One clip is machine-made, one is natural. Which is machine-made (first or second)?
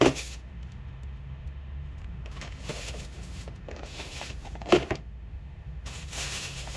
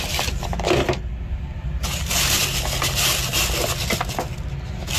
first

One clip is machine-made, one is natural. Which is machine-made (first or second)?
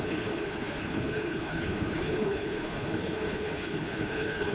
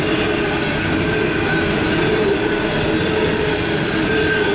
first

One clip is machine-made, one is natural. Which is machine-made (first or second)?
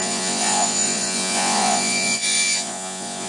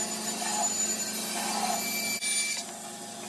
first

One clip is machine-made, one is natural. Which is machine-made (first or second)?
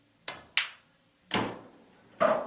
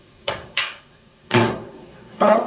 second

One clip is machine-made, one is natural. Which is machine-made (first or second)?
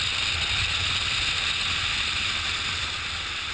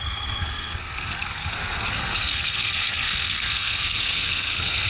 second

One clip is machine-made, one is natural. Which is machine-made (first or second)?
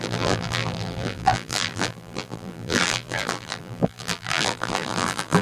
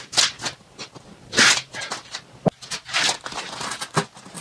first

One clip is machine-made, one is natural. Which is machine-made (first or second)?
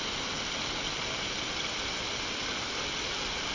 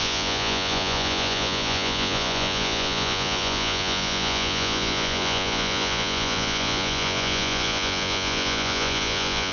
second